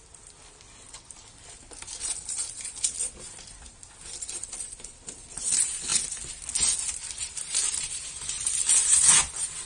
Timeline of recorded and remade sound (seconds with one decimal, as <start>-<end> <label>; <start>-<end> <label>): 0.0-5.9 remade; 5.9-6.8 recorded; 6.8-9.7 remade